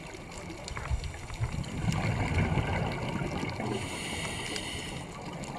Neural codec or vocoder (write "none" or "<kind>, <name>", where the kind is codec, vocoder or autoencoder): none